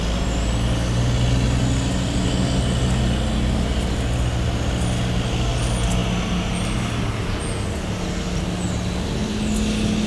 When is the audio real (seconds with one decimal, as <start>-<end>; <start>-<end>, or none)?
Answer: 0.0-10.1